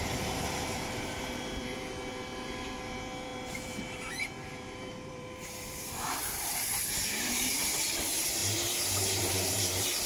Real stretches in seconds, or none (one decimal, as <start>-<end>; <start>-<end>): none